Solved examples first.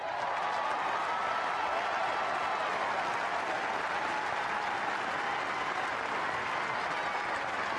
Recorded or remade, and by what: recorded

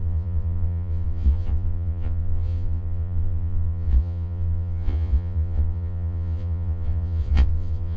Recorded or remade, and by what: remade, vocoder, Vocos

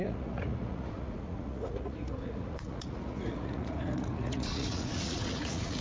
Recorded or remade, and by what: remade, vocoder, Vocos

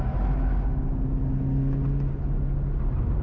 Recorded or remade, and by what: recorded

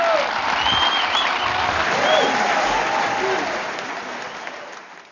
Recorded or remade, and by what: recorded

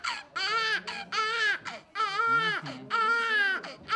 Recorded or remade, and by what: recorded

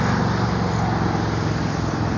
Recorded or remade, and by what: recorded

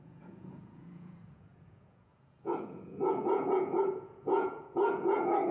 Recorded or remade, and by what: remade, vocoder, Vocos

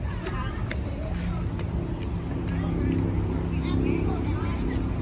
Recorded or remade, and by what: recorded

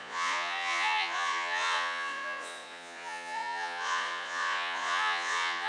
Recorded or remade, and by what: remade, vocoder, Vocos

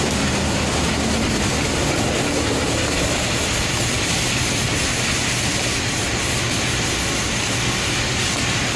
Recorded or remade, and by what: recorded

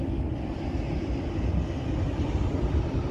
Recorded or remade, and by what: recorded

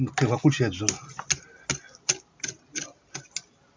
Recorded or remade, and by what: recorded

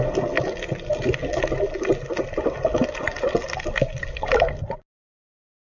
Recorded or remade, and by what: recorded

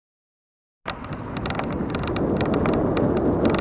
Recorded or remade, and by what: recorded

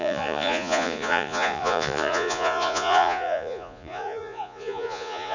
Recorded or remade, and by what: remade, vocoder, Vocos